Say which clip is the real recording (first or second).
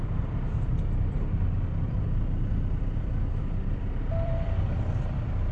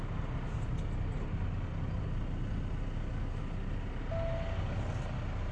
second